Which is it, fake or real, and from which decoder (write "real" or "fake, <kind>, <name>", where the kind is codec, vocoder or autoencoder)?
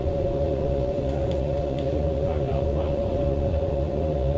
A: fake, vocoder, Vocos